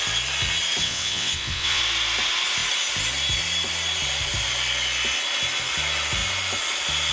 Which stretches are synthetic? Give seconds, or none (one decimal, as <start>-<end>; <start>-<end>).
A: 0.8-1.8